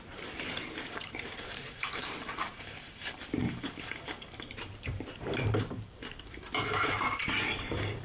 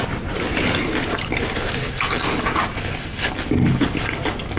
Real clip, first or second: second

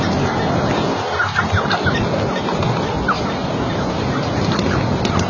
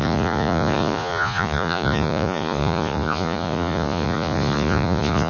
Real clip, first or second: first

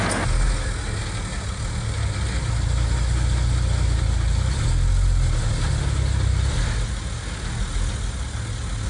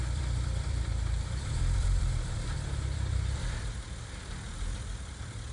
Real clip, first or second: first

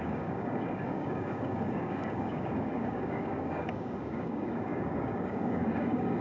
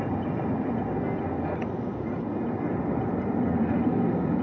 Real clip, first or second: second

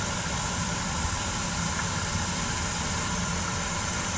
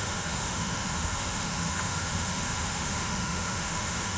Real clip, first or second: first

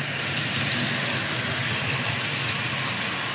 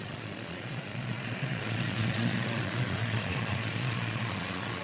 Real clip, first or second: first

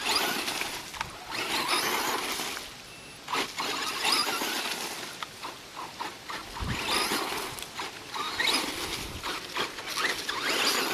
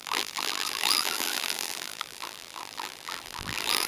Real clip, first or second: first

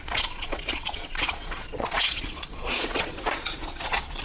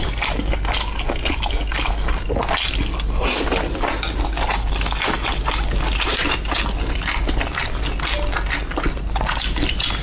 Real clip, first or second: second